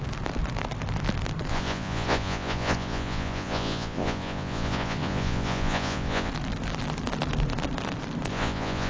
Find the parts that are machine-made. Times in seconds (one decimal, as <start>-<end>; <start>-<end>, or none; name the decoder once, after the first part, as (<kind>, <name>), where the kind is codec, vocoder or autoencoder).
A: 1.5-6.3 (vocoder, Vocos); 8.3-8.9